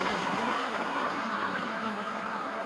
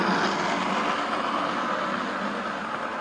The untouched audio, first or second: second